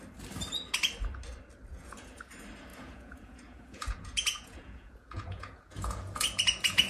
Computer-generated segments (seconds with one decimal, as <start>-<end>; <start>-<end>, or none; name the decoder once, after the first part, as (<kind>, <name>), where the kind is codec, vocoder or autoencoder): 1.7-2.2 (vocoder, Vocos); 2.7-6.9